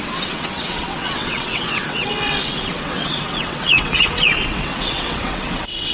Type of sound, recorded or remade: remade